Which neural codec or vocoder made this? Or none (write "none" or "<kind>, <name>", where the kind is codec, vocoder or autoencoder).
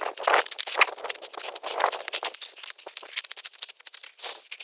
none